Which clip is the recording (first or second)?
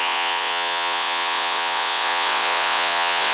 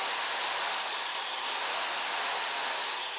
second